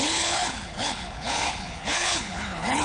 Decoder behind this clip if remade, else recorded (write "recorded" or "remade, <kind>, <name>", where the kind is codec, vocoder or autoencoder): remade, codec, HILCodec